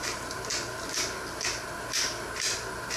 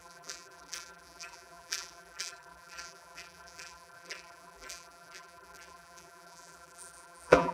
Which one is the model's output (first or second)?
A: second